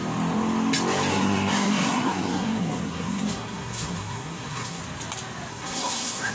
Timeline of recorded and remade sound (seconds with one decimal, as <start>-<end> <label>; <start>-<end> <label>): 0.0-1.1 recorded; 1.1-4.8 remade; 4.8-5.5 recorded; 5.5-6.3 remade